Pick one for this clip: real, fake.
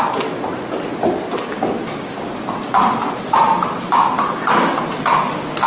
real